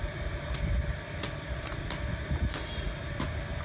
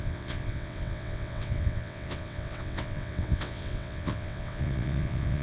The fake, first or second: second